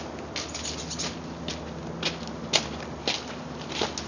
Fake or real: real